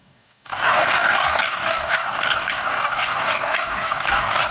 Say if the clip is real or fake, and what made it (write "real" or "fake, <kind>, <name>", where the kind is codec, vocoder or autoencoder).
fake, codec, DAC